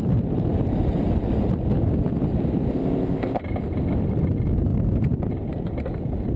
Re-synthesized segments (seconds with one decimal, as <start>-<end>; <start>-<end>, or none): 2.7-3.4